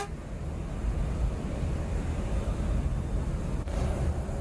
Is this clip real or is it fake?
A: real